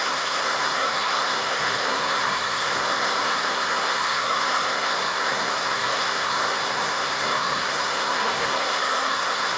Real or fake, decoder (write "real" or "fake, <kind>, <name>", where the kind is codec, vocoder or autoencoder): fake, codec, SNAC